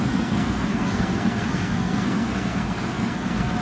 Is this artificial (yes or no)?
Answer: yes